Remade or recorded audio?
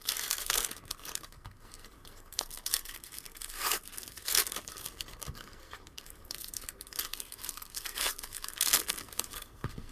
remade